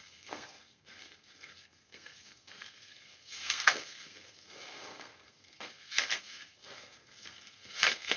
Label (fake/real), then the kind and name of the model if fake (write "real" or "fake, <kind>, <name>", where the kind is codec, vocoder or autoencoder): fake, codec, SNAC